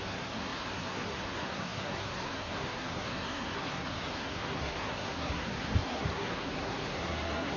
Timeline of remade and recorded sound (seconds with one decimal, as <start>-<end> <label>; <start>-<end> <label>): 0.0-7.6 remade

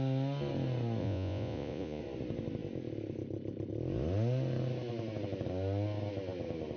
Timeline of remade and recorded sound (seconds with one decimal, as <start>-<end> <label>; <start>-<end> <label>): 0.0-1.0 recorded; 1.0-2.0 remade; 2.0-6.8 recorded

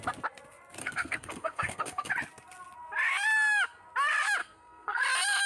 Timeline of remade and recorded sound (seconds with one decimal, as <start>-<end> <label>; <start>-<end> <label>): 0.0-0.8 recorded; 0.8-2.1 remade; 2.1-4.4 recorded; 4.4-5.0 remade; 5.0-5.5 recorded

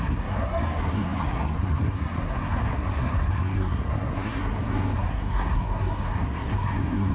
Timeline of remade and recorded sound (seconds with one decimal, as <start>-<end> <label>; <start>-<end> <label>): 0.0-7.1 remade

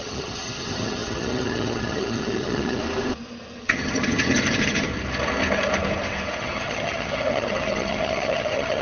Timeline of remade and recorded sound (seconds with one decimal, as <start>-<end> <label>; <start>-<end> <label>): 0.0-2.8 remade; 2.8-3.6 recorded; 3.6-4.9 remade; 4.9-6.4 recorded; 6.4-8.8 remade

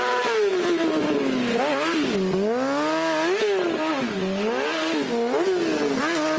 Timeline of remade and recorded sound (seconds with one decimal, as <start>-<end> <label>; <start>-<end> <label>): 0.0-6.4 recorded

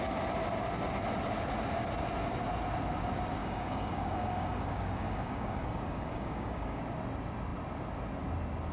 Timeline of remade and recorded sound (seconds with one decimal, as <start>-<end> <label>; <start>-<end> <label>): 0.0-3.4 recorded; 3.4-6.8 remade; 6.8-8.7 recorded